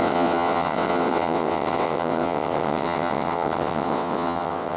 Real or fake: fake